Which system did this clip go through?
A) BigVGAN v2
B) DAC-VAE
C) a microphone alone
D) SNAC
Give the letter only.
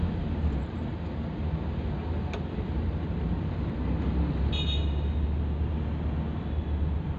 C